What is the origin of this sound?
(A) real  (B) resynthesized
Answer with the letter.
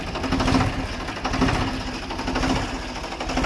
A